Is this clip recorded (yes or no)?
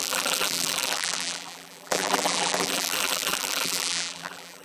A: no